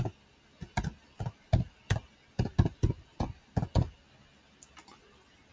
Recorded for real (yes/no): yes